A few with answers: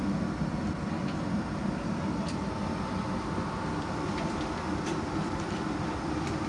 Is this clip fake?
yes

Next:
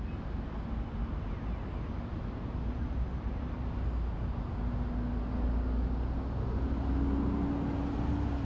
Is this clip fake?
no